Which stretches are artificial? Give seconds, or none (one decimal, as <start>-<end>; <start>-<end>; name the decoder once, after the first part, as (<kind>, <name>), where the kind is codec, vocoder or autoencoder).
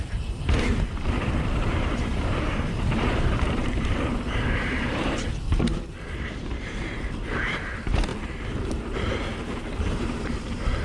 0.0-8.1 (vocoder, BigVGAN v2); 8.7-10.8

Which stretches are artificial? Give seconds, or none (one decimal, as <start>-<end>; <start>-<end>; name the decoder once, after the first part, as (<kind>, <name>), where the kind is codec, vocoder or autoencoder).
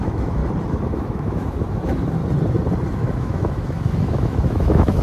0.0-0.4 (autoencoder, DAC-VAE); 0.9-2.2; 2.9-5.0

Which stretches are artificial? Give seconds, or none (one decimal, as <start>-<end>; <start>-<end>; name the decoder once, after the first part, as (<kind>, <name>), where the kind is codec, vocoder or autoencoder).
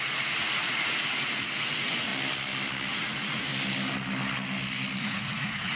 0.0-2.1 (vocoder, Vocos); 2.9-3.5; 5.0-5.8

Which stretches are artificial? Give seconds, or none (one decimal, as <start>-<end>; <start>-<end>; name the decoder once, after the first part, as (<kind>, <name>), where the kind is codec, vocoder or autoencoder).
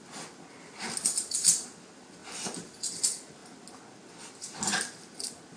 2.2-2.8 (vocoder, BigVGAN v2)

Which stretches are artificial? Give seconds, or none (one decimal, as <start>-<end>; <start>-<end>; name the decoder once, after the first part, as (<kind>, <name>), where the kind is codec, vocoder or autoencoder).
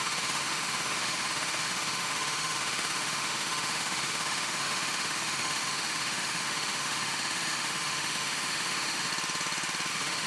0.0-9.1 (autoencoder, DAC-VAE); 9.9-10.3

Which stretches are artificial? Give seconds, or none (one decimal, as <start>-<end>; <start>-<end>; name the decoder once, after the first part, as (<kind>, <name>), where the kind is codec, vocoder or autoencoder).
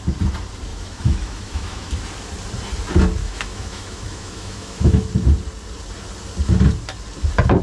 0.7-1.9 (autoencoder, DAC-VAE); 3.2-5.1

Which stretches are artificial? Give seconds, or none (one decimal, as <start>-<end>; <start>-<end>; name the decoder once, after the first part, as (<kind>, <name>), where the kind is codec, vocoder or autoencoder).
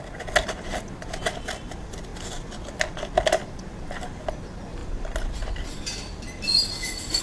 none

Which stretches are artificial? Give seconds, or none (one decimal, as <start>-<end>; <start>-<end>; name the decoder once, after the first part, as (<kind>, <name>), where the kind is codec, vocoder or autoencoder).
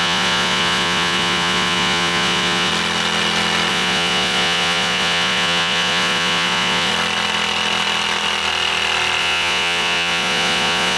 0.0-2.7 (vocoder, Vocos); 3.7-6.9; 9.2-11.0